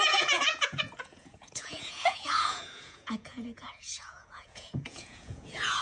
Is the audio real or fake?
fake